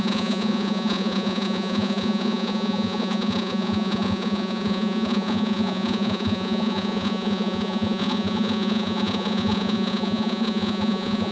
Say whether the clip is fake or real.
fake